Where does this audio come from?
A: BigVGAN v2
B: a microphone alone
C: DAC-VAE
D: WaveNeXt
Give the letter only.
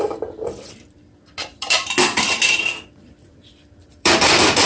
A